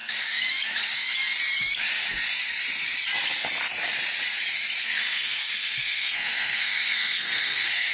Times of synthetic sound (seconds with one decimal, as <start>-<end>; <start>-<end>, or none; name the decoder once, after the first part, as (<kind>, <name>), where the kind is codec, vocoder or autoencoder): 4.8-7.9 (codec, SNAC)